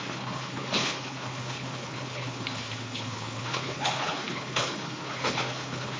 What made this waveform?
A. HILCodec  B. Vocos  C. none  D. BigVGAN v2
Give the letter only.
A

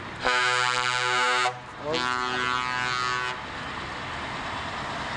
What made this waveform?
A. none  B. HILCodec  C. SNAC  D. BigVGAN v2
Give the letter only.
A